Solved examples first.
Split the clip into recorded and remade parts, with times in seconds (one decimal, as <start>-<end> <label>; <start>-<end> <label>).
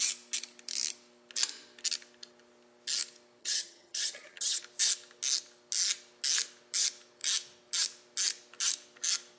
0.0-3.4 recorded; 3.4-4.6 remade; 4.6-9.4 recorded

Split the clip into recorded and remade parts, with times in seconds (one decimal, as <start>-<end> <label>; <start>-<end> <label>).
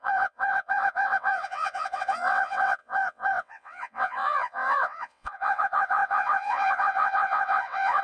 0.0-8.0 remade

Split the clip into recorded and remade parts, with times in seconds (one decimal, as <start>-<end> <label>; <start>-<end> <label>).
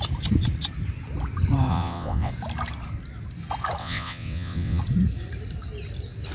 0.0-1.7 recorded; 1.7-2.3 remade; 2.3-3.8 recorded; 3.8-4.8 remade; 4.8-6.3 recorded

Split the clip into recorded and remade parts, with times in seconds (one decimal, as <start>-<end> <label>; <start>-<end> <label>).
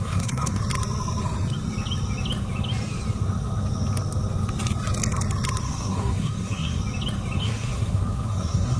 0.0-0.6 remade; 0.6-5.6 recorded; 5.6-6.8 remade; 6.8-7.4 recorded; 7.4-8.8 remade